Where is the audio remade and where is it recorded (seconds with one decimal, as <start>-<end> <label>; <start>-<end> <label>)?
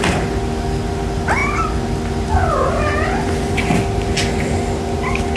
0.0-5.4 recorded